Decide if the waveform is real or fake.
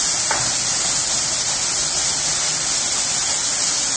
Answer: real